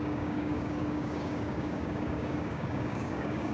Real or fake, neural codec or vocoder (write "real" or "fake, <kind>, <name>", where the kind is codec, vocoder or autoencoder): fake, codec, DAC